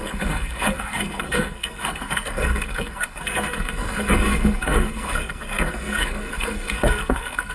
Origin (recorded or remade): remade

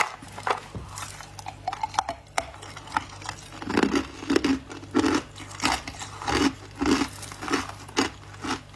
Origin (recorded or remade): recorded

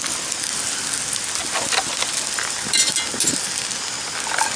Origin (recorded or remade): recorded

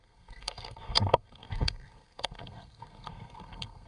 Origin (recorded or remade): remade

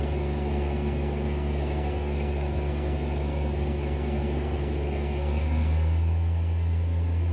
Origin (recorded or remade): remade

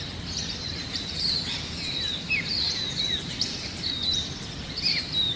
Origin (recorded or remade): recorded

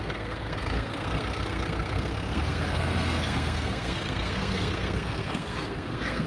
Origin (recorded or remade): remade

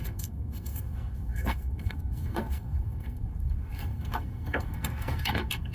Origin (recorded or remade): remade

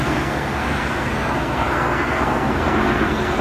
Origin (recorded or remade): remade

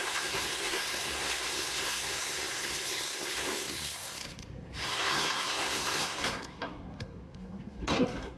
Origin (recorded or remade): remade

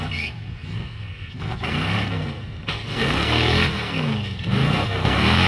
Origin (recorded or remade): remade